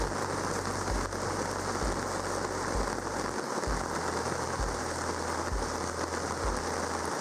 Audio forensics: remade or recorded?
recorded